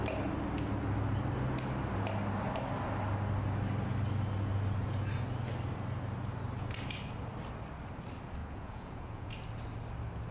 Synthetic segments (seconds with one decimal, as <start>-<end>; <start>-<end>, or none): 8.4-9.3